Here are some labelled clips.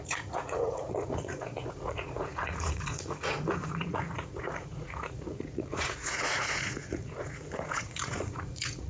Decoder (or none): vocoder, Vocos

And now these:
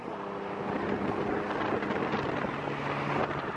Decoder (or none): none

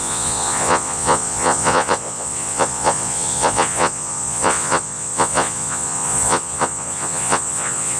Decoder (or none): vocoder, Vocos